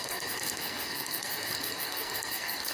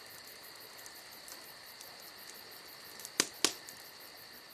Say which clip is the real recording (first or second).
second